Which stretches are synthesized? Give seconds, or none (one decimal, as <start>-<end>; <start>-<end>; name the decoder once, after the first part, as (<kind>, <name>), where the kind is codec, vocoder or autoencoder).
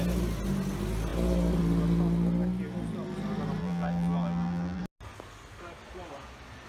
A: 3.6-4.8 (vocoder, BigVGAN v2)